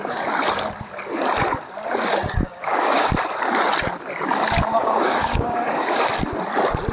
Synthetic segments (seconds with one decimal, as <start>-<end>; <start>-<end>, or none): 2.4-3.1; 4.8-6.1